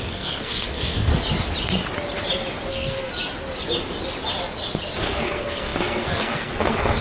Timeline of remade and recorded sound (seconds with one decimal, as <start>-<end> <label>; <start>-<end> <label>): 0.0-1.1 remade; 1.1-2.7 recorded; 2.7-3.1 remade; 3.1-5.0 recorded; 5.0-7.0 remade